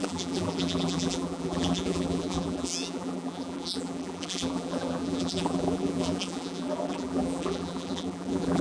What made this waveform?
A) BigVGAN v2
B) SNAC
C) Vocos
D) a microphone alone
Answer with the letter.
A